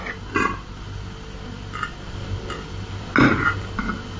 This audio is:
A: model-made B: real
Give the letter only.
B